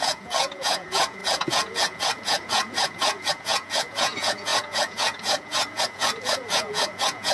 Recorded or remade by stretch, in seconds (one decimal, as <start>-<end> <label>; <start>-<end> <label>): 0.0-7.3 remade